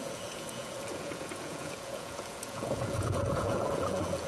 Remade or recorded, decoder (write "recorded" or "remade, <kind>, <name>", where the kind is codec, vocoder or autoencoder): remade, vocoder, Vocos